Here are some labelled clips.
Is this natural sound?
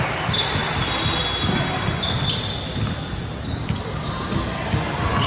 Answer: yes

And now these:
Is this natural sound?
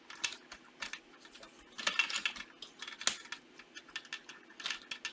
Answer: yes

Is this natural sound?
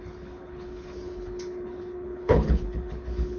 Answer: no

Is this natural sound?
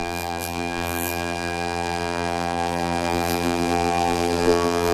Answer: no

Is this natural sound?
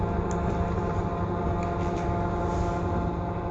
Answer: yes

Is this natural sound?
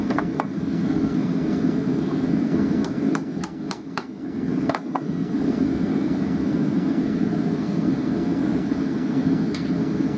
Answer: no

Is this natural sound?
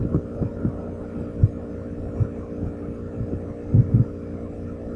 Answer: yes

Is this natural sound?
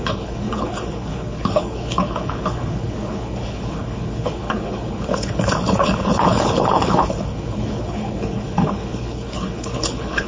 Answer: no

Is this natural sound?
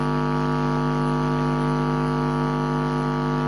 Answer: yes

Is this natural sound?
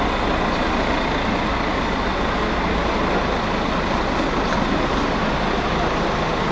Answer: yes